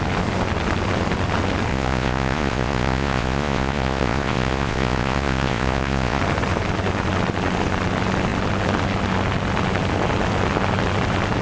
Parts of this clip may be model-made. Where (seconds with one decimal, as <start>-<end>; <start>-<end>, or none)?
1.7-6.2

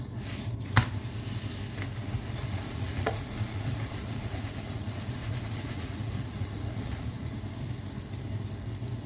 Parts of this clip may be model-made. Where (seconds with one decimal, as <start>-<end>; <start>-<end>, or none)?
2.4-7.4

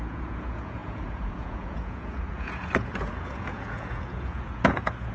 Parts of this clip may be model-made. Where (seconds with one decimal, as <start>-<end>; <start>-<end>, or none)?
0.0-5.1

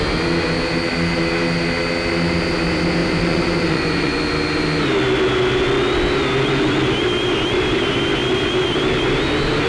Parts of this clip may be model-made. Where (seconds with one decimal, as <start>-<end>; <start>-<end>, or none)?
3.0-4.2

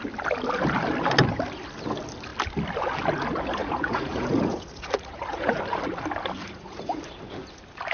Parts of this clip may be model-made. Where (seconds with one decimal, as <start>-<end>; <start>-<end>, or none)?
3.6-5.6; 6.4-7.0

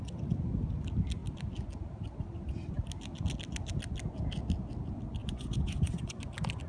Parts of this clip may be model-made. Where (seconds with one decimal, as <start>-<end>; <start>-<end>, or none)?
5.2-6.2

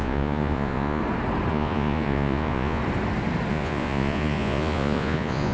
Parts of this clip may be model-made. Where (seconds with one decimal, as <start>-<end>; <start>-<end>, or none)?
0.0-1.0; 1.5-2.8; 3.5-5.5

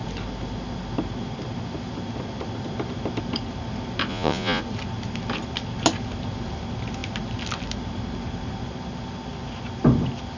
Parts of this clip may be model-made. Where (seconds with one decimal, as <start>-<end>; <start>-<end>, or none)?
4.1-4.6